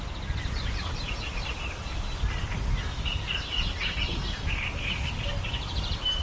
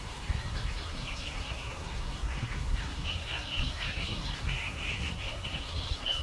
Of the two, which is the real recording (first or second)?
first